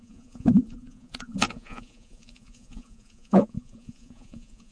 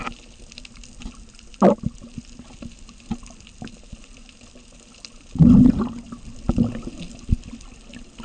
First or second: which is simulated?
first